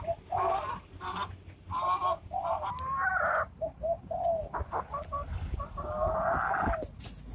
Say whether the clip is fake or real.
real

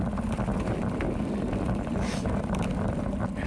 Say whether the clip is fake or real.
real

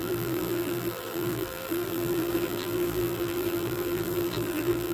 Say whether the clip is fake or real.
fake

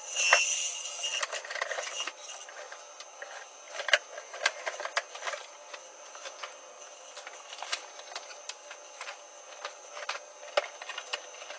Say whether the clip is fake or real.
real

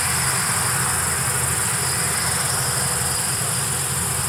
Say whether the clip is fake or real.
real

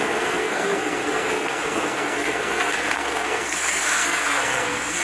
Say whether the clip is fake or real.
fake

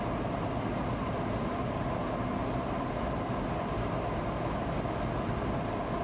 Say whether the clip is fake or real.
real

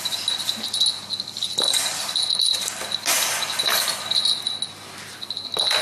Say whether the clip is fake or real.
real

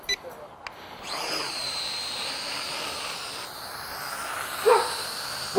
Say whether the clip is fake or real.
real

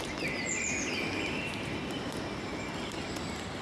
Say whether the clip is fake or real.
real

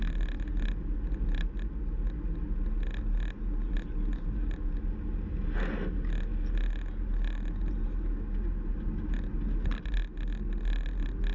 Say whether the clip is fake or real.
real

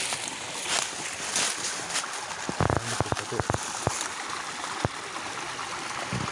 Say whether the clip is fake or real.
real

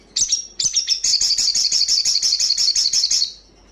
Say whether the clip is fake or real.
real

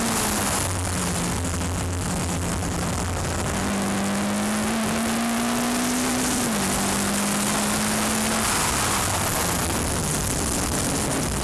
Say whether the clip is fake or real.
real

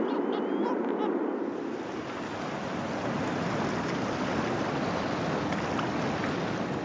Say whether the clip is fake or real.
real